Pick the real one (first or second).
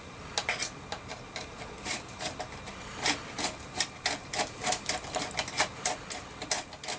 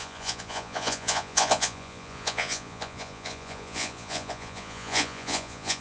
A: first